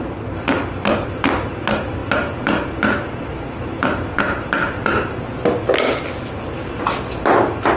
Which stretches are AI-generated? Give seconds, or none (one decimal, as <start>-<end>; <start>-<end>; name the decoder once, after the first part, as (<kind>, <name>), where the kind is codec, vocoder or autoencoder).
none